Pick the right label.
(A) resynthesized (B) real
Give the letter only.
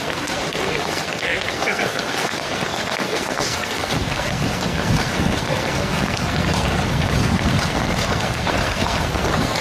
A